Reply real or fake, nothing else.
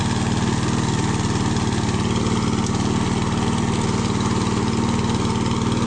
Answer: real